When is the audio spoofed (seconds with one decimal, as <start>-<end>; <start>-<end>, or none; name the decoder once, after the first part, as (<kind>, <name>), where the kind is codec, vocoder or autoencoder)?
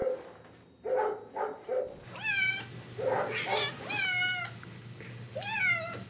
none